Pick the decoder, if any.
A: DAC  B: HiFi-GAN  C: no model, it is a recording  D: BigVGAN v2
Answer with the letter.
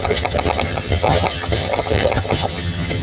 B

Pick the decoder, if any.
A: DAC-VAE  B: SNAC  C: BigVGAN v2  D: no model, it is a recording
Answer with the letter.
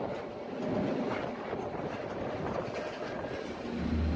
D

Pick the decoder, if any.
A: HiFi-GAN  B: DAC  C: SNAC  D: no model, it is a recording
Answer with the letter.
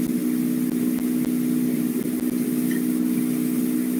D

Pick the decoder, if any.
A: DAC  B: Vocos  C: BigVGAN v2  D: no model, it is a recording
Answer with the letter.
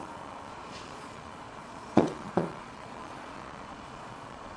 B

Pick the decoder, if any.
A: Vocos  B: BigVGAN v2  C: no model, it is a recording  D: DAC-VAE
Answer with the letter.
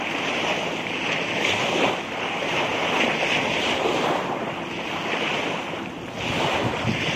C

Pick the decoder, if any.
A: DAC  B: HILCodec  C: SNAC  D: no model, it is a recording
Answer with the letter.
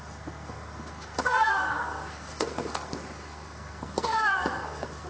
C